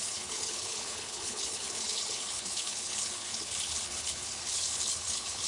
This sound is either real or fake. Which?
fake